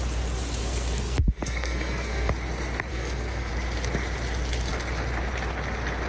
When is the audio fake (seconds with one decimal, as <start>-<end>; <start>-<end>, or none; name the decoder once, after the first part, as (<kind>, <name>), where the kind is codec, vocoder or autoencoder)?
0.6-2.3 (codec, SNAC); 2.9-3.5